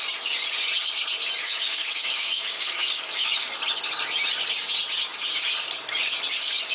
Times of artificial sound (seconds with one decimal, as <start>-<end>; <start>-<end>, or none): 1.4-3.5